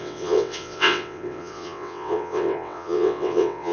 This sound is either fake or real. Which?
fake